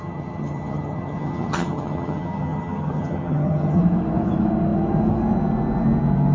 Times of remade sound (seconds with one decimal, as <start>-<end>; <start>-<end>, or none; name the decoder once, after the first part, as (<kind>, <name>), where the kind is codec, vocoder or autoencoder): 0.0-3.8 (vocoder, HiFi-GAN)